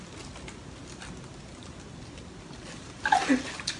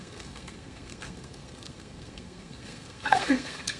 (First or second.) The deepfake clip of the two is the second